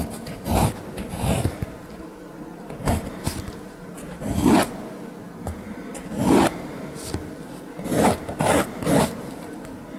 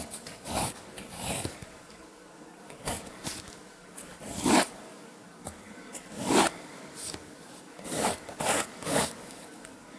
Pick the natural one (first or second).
first